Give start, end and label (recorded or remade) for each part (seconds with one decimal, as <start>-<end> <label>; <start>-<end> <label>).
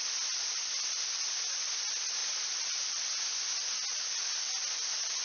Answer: 0.0-5.2 recorded